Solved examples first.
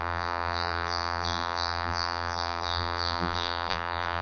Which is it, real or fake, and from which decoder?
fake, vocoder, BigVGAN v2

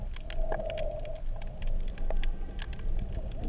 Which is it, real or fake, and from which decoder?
real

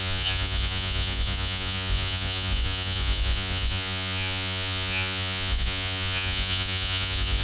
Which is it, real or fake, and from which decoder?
fake, vocoder, Vocos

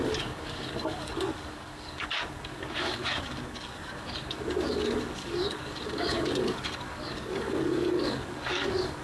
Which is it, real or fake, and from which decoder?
fake, codec, DAC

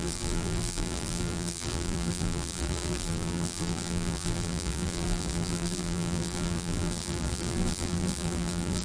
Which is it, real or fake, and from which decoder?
fake, vocoder, BigVGAN v2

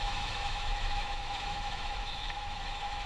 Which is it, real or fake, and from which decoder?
fake, autoencoder, DAC-VAE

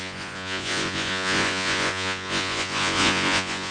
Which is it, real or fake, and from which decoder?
fake, vocoder, Vocos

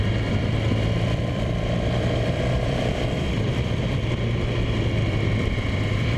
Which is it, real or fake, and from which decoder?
fake, vocoder, BigVGAN v2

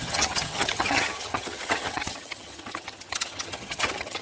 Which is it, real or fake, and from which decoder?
fake, vocoder, HiFi-GAN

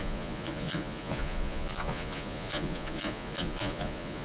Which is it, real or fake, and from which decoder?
fake, vocoder, Vocos